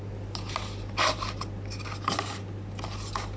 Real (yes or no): yes